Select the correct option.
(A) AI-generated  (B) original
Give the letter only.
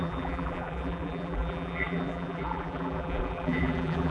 A